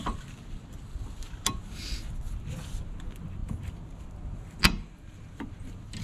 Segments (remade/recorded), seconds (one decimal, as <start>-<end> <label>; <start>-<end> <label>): 0.0-6.0 recorded